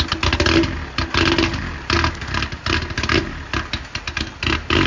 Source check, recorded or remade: recorded